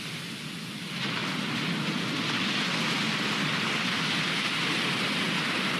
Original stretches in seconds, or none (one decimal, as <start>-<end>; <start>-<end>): 0.0-5.8